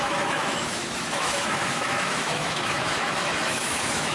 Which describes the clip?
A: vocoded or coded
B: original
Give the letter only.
A